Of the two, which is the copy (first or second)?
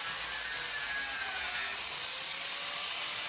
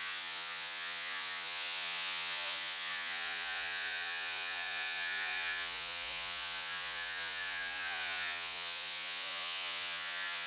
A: second